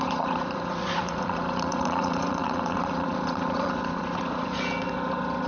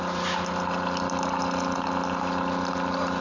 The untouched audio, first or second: second